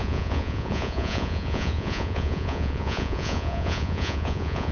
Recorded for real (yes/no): no